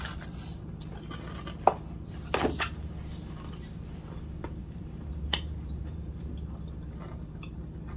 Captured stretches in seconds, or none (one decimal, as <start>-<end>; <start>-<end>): 0.0-4.6; 6.5-8.0